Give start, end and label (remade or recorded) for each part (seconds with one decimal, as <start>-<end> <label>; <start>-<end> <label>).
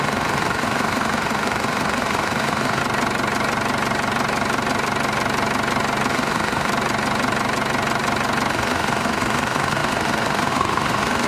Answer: 0.0-2.8 remade; 2.8-6.1 recorded; 6.1-6.7 remade; 6.7-8.5 recorded; 8.5-11.3 remade